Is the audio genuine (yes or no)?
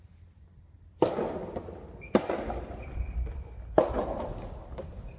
yes